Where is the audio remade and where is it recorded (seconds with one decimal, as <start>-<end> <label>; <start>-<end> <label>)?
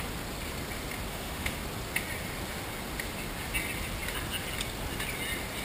0.0-1.1 recorded; 1.1-1.6 remade; 1.6-5.6 recorded